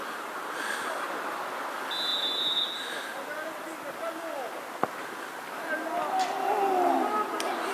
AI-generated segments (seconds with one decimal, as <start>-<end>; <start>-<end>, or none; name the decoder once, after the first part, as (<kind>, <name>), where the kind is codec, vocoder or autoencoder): none